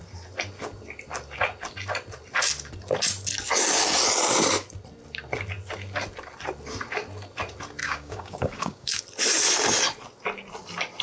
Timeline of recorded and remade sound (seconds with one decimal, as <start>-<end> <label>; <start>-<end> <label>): 0.0-7.8 recorded; 7.8-9.0 remade; 9.0-11.0 recorded